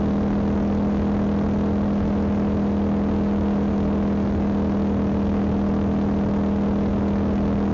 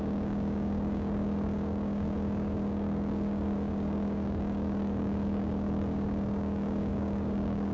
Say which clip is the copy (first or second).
second